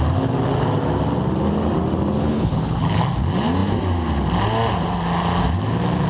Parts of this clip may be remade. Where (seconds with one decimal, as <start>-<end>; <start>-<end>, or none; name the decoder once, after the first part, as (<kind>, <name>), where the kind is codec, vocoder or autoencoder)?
2.2-3.0 (codec, HILCodec)